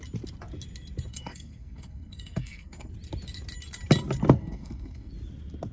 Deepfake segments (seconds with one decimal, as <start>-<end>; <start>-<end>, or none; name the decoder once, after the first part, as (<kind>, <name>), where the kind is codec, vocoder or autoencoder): 1.1-2.9 (codec, SNAC); 4.4-5.1